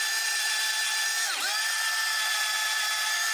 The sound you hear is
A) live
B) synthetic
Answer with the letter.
B